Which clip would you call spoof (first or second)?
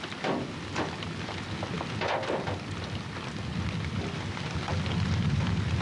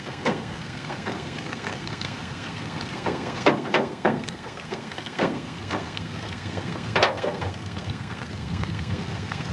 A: second